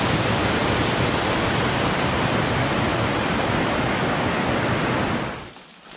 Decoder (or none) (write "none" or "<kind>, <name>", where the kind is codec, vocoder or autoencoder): none